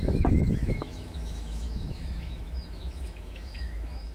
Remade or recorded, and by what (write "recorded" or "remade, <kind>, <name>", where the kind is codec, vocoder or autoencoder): remade, autoencoder, DAC-VAE